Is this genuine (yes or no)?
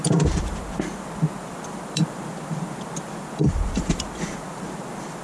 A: yes